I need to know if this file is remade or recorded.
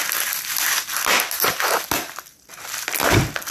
recorded